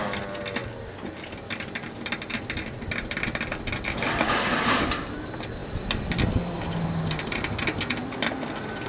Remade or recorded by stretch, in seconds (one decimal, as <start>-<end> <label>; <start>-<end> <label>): 0.0-0.6 recorded; 0.6-1.9 remade; 1.9-8.9 recorded